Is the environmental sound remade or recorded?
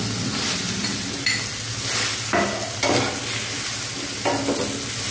recorded